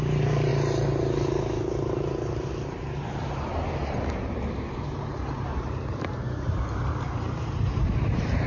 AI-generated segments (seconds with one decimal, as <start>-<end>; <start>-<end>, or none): 0.0-0.5; 4.7-8.5